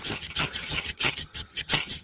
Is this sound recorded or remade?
remade